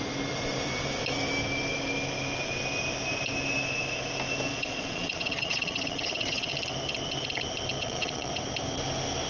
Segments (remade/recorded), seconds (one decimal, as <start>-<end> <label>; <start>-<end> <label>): 0.0-4.5 recorded; 4.5-6.5 remade; 6.5-7.8 recorded; 7.8-8.3 remade; 8.3-9.3 recorded